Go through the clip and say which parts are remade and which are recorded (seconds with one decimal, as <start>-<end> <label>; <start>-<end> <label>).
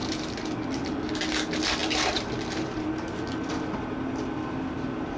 0.0-1.1 remade; 1.1-1.8 recorded; 1.8-2.9 remade; 2.9-5.2 recorded